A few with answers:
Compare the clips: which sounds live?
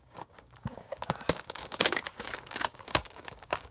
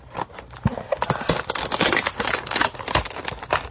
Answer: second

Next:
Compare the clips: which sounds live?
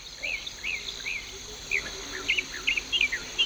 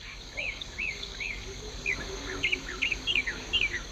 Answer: first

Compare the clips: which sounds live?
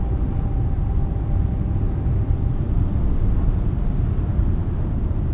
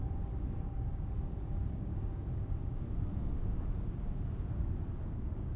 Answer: first